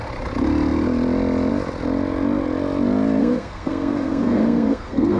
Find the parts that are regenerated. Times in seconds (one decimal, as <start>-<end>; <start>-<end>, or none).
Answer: 3.2-5.2